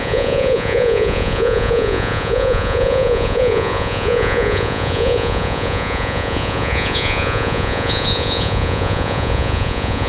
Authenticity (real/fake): fake